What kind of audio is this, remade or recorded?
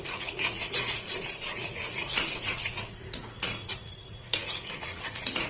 remade